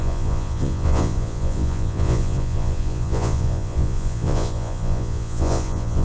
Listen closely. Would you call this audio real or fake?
fake